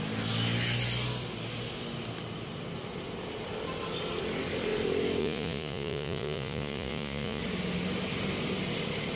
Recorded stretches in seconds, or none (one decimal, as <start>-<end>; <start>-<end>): 0.0-5.2; 7.4-9.2

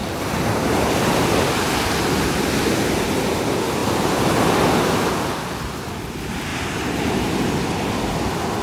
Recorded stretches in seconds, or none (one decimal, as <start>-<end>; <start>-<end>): 0.9-3.8; 4.3-8.6

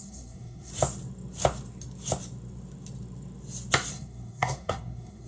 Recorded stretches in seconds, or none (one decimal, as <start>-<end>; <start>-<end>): 0.7-3.9